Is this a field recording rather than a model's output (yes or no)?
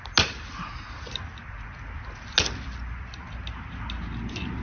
yes